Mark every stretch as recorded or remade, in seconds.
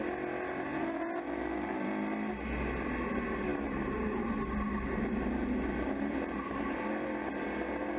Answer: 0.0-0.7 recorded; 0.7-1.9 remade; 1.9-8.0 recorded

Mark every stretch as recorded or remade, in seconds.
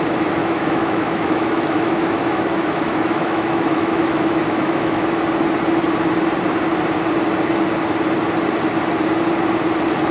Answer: 0.0-0.4 recorded; 0.4-5.2 remade; 5.2-10.1 recorded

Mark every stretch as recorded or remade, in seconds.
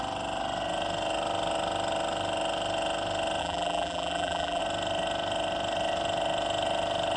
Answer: 0.0-3.4 recorded; 3.4-4.6 remade; 4.6-7.2 recorded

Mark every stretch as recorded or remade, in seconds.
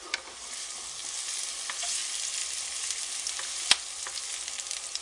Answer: 0.0-5.0 recorded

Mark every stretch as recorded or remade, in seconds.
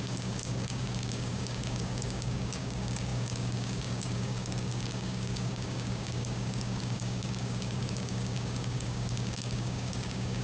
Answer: 0.0-10.4 remade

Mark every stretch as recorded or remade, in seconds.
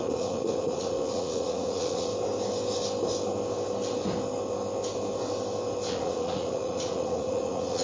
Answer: 0.0-2.1 remade; 2.1-5.9 recorded; 5.9-7.8 remade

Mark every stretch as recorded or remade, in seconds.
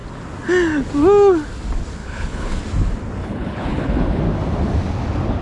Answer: 0.0-2.0 recorded; 2.0-2.6 remade; 2.6-3.2 recorded; 3.2-4.2 remade; 4.2-5.4 recorded